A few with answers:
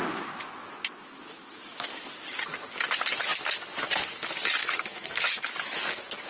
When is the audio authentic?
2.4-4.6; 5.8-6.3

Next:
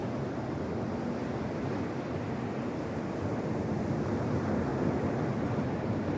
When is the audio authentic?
0.0-6.2

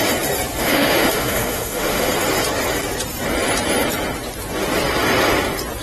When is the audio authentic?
0.0-0.6; 2.1-5.8

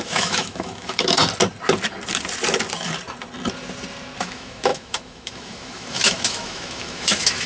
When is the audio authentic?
1.2-4.2